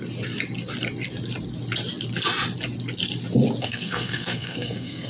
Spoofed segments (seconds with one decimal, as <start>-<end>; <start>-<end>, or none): 3.6-5.1